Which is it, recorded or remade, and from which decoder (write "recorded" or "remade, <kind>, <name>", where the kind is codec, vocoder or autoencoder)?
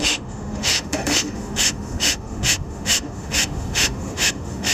remade, autoencoder, DAC-VAE